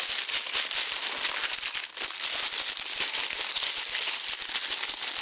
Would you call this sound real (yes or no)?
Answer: yes